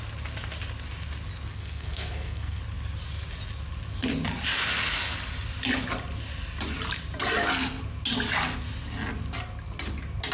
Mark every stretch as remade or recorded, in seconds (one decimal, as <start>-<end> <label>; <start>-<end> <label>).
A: 0.0-1.5 recorded; 1.5-2.6 remade; 2.6-10.3 recorded